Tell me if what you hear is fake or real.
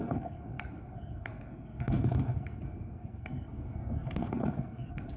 fake